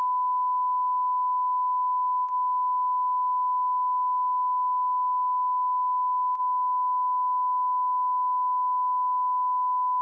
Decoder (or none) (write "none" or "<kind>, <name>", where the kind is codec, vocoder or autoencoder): none